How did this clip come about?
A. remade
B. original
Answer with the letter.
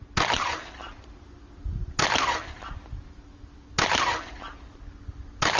B